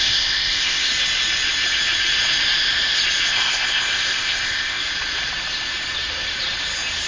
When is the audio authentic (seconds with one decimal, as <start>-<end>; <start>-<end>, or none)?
0.9-3.3; 4.8-7.1